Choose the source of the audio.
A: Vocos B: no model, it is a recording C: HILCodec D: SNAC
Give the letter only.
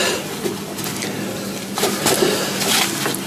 B